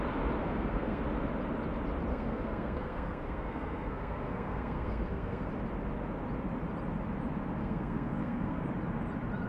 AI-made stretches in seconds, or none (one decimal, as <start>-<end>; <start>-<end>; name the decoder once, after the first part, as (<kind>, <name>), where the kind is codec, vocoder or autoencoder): 0.4-1.0 (codec, SNAC); 2.1-5.5; 7.6-8.6